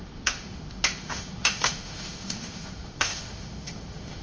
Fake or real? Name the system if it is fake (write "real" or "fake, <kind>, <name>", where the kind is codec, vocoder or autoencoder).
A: fake, autoencoder, DAC-VAE